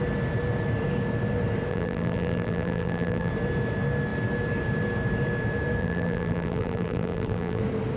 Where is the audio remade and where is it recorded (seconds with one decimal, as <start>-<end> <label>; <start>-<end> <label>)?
0.0-1.7 recorded; 1.7-3.3 remade; 3.3-5.8 recorded; 5.8-7.6 remade; 7.6-8.0 recorded